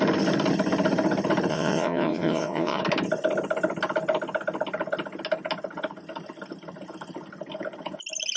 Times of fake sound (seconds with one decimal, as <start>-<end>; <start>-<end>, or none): 1.5-2.8